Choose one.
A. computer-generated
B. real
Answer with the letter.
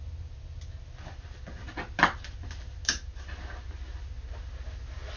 B